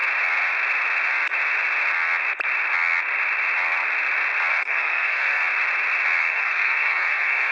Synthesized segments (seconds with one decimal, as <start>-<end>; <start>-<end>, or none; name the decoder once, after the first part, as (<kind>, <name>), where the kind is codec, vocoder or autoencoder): 4.5-5.4 (codec, SNAC); 6.2-7.5